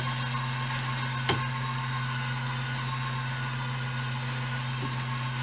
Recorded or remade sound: recorded